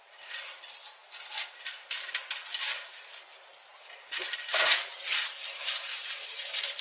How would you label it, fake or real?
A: real